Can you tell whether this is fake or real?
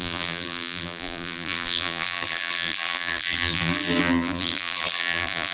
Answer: fake